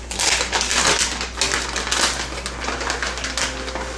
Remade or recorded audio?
recorded